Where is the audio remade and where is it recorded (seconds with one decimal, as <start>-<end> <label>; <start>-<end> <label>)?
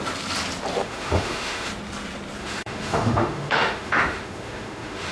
0.0-0.8 recorded; 0.8-1.7 remade; 1.7-2.4 recorded; 2.4-5.1 remade